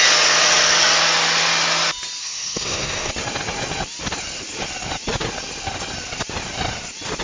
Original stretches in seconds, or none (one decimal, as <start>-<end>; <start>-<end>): 0.0-2.2; 3.1-7.2